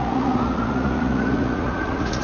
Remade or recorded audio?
remade